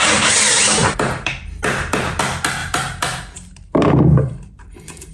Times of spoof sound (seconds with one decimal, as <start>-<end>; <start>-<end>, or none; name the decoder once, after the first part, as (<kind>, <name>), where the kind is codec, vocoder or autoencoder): 0.8-2.2 (vocoder, BigVGAN v2); 2.6-5.1